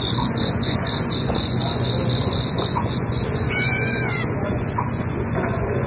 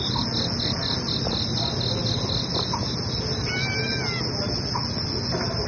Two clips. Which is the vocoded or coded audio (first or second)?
first